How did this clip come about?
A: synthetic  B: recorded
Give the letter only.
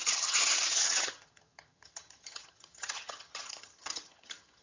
A